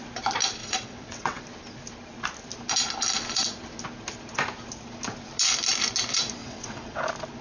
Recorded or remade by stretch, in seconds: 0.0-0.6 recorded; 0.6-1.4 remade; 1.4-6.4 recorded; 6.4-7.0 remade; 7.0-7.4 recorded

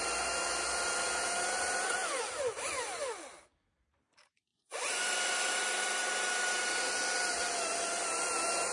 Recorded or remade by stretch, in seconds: 0.0-4.5 recorded; 4.5-5.6 remade; 5.6-8.7 recorded

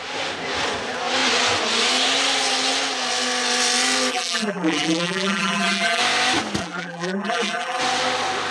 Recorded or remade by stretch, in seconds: 0.0-4.1 recorded; 4.1-6.0 remade; 6.0-6.6 recorded; 6.6-7.8 remade; 7.8-8.5 recorded

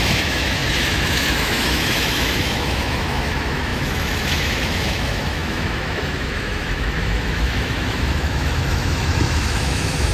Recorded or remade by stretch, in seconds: 0.0-10.1 remade

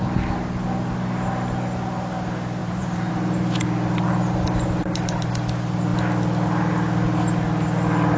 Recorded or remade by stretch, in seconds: 0.0-2.6 recorded; 2.6-3.1 remade; 3.1-8.2 recorded

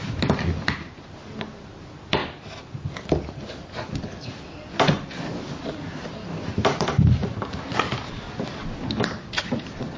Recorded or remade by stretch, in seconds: 0.0-10.0 recorded

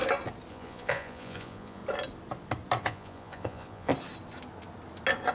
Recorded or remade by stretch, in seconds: 0.0-0.5 recorded; 0.5-1.8 remade; 1.8-2.8 recorded; 2.8-3.9 remade; 3.9-5.3 recorded

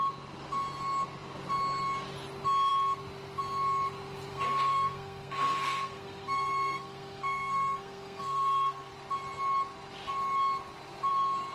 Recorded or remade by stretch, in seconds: 0.0-4.3 recorded; 4.3-8.9 remade; 8.9-11.5 recorded